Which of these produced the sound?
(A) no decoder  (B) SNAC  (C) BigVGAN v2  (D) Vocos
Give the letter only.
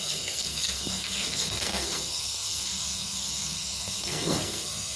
B